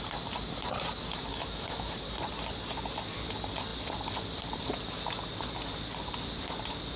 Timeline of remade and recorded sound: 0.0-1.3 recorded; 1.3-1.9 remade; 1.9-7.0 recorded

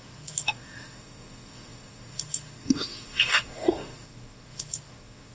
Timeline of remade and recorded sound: 0.0-5.3 remade

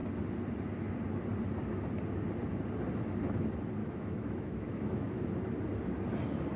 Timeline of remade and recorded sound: 0.0-3.8 recorded; 3.8-5.3 remade; 5.3-6.6 recorded